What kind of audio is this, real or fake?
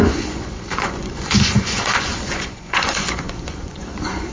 fake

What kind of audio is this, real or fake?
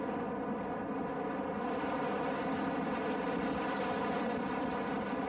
real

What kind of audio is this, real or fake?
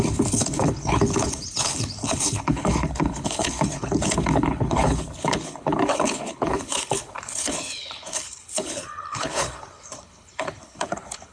fake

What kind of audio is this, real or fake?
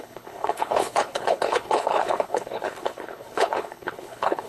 fake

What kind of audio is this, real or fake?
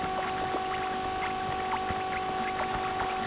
real